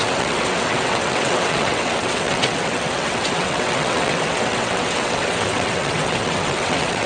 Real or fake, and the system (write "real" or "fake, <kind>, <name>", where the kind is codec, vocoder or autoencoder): fake, vocoder, WaveNeXt